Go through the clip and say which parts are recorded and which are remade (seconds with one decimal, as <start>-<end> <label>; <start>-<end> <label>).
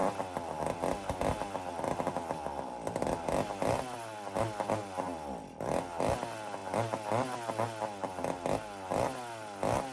0.0-9.9 recorded